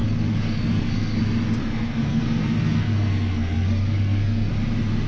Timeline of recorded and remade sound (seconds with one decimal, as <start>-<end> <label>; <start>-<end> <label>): 0.0-1.2 remade; 1.2-1.6 recorded; 1.6-4.5 remade; 4.5-5.1 recorded